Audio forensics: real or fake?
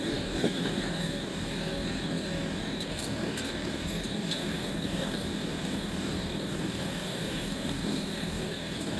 fake